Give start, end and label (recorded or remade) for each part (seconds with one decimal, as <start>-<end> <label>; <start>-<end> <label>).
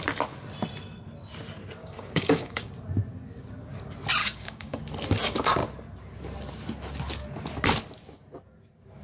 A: 0.0-1.8 recorded; 1.8-2.7 remade; 2.7-4.2 recorded; 4.2-4.8 remade; 4.8-9.0 recorded